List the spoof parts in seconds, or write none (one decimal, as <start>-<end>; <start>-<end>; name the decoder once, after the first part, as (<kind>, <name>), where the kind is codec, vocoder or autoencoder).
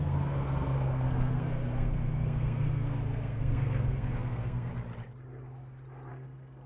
0.0-4.7 (codec, SNAC); 6.1-6.7